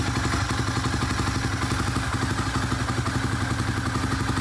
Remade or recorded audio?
recorded